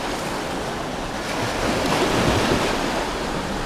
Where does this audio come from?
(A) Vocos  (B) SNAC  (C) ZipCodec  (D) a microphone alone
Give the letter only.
D